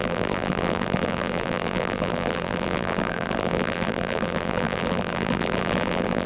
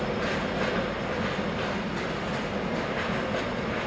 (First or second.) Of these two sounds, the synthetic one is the first